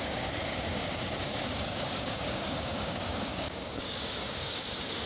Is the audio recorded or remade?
remade